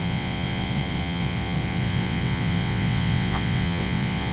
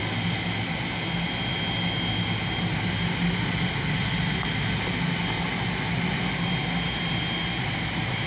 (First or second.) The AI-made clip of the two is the first